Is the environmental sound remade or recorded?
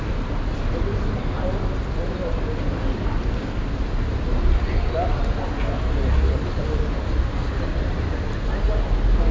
recorded